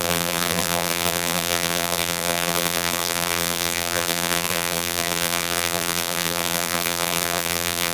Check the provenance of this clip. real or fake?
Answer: fake